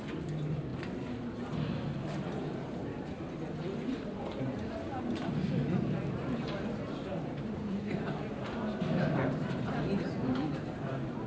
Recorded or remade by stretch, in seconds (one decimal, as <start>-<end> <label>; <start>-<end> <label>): 0.0-7.1 recorded; 7.1-7.8 remade; 7.8-11.3 recorded